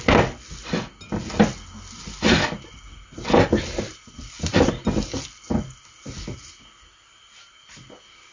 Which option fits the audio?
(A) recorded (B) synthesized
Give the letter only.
A